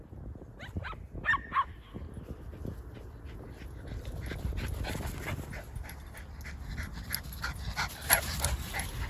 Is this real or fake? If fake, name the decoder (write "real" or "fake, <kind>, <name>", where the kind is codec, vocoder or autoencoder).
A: real